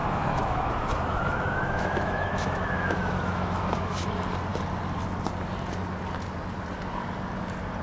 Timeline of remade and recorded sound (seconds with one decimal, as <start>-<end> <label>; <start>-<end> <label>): 0.0-4.1 remade; 4.1-7.8 recorded